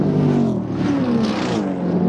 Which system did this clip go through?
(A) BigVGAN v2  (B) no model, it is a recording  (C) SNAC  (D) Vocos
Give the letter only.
B